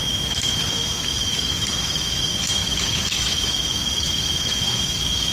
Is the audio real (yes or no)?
no